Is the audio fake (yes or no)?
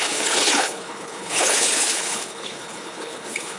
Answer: yes